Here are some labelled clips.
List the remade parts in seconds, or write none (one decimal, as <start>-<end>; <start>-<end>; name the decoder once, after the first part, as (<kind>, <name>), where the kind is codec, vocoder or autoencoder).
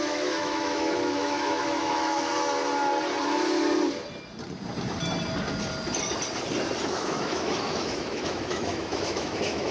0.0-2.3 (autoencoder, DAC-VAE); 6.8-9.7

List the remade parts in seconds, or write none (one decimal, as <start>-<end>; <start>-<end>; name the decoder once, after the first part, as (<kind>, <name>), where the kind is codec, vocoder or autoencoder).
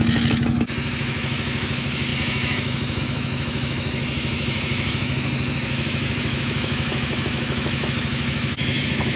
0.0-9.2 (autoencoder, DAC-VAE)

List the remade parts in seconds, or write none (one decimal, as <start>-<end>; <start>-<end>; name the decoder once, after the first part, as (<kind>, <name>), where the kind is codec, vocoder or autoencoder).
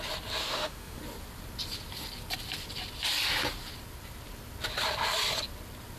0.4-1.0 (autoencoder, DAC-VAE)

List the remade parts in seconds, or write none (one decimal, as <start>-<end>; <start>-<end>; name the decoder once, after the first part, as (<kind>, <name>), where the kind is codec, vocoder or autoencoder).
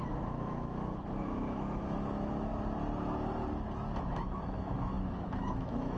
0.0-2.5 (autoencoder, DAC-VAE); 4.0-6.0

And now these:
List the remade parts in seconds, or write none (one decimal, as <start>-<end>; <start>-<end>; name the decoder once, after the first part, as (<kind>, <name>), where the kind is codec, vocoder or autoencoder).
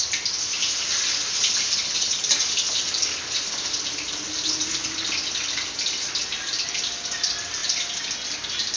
none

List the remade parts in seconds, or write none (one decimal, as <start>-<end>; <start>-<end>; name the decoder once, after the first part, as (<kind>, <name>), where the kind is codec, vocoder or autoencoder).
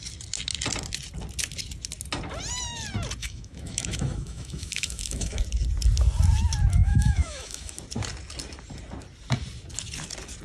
3.2-5.4 (autoencoder, DAC-VAE); 6.8-7.8